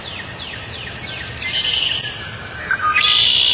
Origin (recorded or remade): recorded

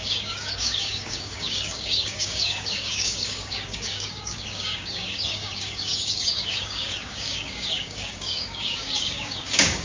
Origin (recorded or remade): remade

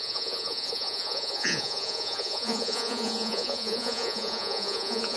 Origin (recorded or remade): remade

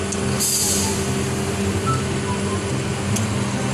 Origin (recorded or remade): recorded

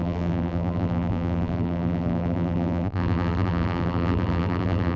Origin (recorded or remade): remade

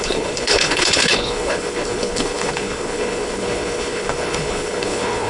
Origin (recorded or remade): remade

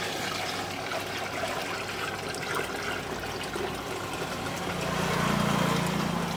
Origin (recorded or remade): recorded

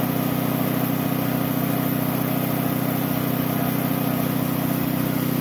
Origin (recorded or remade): recorded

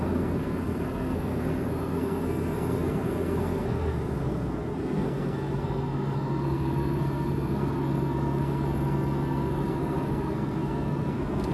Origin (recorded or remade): remade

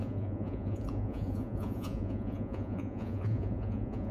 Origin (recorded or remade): remade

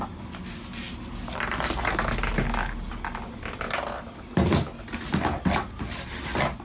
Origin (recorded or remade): recorded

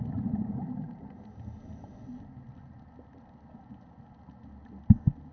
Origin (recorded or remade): recorded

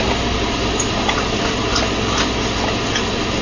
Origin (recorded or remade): recorded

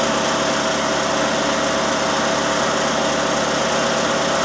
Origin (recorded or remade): recorded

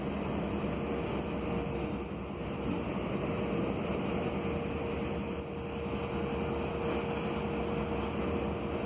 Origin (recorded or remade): recorded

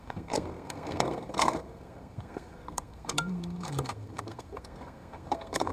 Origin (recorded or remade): remade